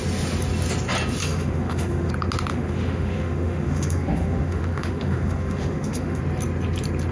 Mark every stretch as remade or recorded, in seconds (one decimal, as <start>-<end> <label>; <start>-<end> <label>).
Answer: 0.0-1.2 recorded; 1.2-2.1 remade; 2.1-2.5 recorded; 2.5-6.2 remade; 6.2-7.1 recorded